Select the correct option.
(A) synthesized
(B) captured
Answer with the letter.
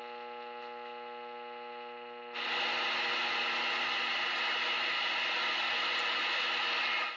B